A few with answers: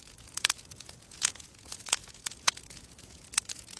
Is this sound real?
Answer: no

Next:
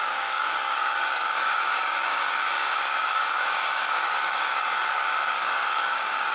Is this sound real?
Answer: no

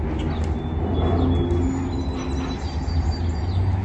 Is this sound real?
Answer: yes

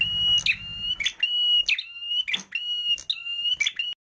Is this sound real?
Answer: yes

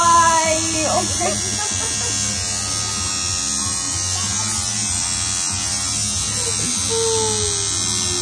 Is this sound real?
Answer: yes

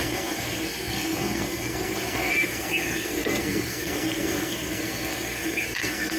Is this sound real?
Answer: no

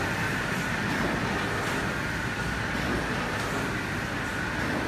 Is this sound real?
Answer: yes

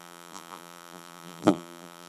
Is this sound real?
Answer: no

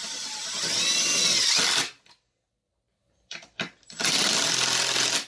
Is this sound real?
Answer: yes